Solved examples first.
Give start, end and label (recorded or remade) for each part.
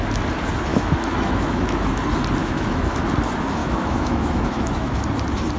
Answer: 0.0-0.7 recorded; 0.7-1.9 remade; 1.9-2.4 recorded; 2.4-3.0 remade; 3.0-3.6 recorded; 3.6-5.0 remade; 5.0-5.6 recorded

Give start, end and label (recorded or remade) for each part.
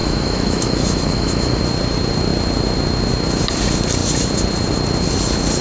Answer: 0.0-1.6 remade; 1.6-5.6 recorded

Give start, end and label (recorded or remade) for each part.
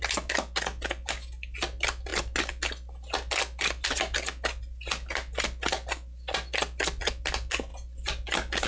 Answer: 0.0-8.7 recorded